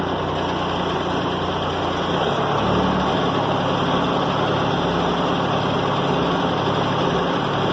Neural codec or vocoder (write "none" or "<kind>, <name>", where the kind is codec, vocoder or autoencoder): none